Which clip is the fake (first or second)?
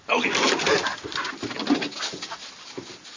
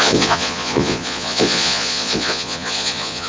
second